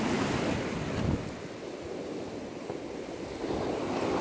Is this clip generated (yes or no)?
no